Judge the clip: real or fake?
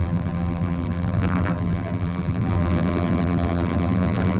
fake